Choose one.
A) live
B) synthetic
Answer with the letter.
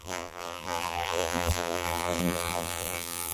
B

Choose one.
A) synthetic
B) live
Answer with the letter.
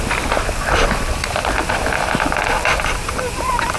B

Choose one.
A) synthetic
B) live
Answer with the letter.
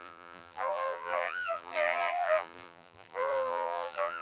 A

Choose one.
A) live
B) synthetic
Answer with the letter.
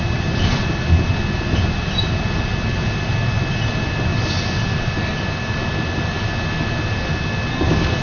A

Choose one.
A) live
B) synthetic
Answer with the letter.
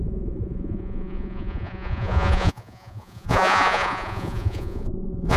B